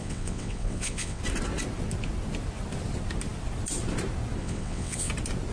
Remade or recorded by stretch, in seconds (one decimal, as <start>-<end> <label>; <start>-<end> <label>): 0.0-1.2 remade; 1.2-4.4 recorded; 4.4-5.1 remade; 5.1-5.5 recorded